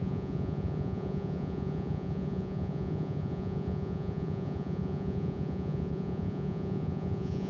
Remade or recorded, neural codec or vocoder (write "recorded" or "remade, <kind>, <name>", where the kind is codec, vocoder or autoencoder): remade, vocoder, Vocos